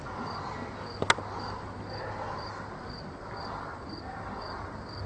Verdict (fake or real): real